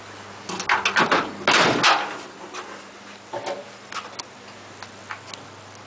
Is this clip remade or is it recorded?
recorded